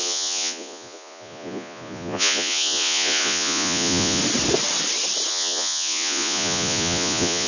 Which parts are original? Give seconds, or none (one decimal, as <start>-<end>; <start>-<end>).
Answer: 4.2-5.3